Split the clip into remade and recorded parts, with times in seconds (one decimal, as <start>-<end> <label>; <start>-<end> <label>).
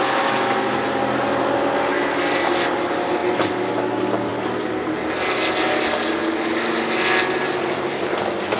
0.0-8.6 recorded